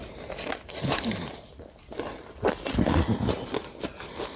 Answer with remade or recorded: recorded